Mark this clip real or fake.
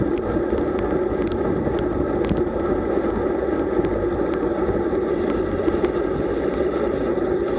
real